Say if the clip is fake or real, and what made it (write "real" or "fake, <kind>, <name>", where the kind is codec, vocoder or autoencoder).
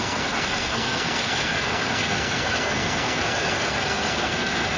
fake, codec, SNAC